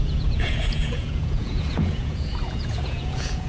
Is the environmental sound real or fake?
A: fake